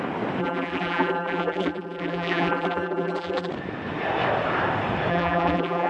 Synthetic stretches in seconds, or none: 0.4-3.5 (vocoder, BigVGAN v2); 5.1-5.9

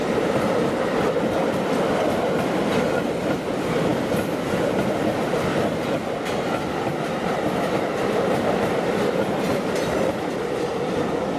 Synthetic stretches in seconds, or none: 0.0-2.1 (vocoder, BigVGAN v2)

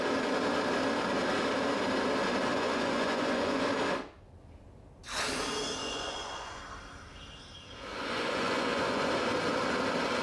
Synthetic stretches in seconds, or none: 2.5-3.6 (vocoder, Vocos); 5.8-6.6; 7.9-9.1

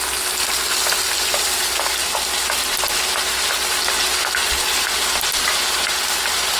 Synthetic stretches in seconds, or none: 0.0-2.0 (vocoder, BigVGAN v2); 5.9-6.6

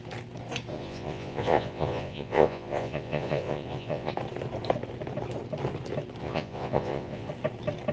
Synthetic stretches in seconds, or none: 0.7-4.1 (vocoder, Vocos); 6.2-7.3